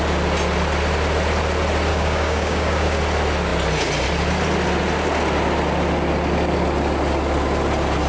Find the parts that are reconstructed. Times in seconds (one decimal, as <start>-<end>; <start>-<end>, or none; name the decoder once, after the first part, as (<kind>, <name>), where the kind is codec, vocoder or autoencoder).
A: 1.9-3.0 (codec, DAC)